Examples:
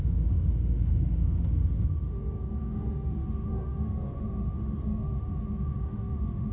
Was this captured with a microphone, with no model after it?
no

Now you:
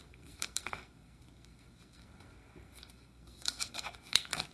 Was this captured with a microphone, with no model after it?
no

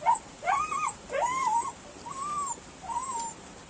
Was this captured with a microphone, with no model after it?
yes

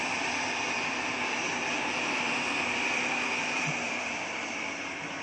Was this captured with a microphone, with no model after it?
no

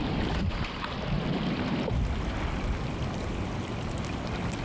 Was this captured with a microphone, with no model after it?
yes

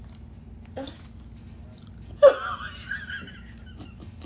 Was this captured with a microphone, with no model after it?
yes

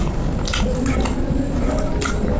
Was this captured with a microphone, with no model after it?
yes